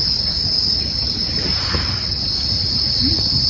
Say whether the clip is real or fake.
real